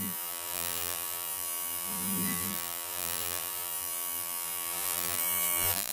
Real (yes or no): no